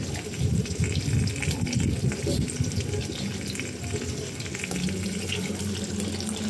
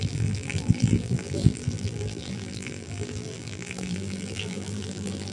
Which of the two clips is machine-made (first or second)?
second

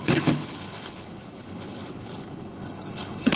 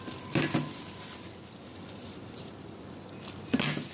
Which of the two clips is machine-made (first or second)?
first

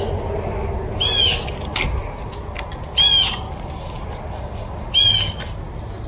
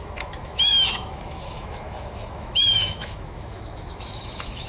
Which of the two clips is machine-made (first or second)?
second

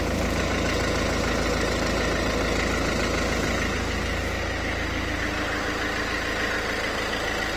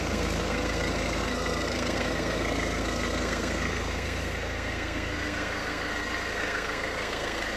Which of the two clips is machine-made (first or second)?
second